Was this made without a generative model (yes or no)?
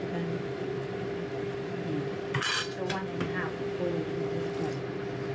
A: yes